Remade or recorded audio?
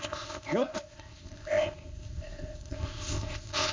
remade